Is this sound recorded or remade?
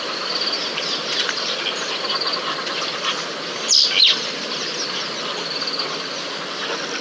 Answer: recorded